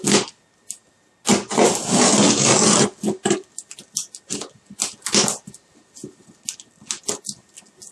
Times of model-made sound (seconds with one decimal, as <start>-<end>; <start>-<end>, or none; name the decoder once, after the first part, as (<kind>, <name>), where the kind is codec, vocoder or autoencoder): none